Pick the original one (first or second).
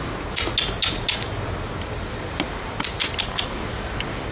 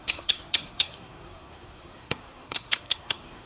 first